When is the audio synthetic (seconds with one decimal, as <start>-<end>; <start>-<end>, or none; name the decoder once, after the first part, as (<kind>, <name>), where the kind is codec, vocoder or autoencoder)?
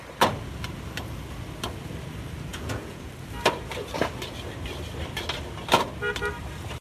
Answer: 2.5-3.1 (vocoder, Vocos)